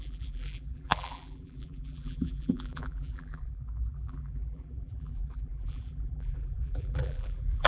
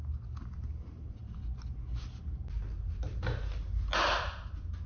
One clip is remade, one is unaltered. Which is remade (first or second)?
first